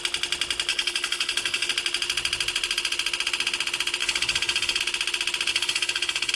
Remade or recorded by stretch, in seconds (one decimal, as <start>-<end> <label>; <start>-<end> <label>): 0.0-0.7 recorded; 0.7-1.7 remade; 1.7-4.0 recorded; 4.0-4.8 remade; 4.8-5.5 recorded; 5.5-6.3 remade